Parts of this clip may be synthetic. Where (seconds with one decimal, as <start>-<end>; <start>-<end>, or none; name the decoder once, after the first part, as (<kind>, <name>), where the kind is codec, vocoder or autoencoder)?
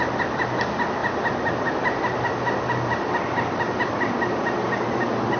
none